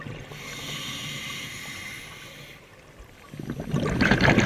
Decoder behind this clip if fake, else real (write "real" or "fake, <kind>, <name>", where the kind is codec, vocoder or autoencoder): real